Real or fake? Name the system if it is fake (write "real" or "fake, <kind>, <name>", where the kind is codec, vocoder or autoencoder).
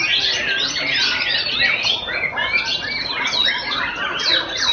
real